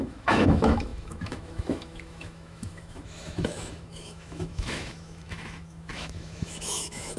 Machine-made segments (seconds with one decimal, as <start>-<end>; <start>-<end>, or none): 0.0-7.2